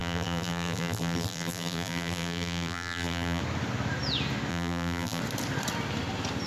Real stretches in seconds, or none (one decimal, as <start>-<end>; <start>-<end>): 3.4-4.5; 5.2-6.5